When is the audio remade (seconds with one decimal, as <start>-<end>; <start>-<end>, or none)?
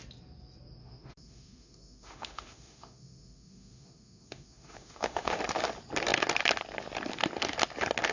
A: 0.8-5.4